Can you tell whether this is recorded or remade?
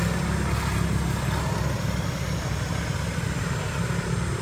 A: recorded